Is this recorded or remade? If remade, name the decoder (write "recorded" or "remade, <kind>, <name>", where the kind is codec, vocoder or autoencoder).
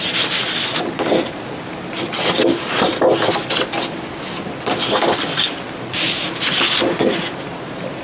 recorded